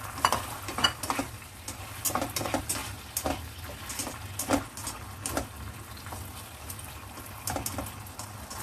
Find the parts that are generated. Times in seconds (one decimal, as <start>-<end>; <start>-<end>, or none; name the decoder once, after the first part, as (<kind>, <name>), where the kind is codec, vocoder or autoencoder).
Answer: none